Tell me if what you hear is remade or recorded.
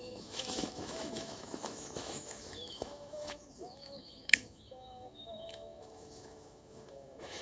remade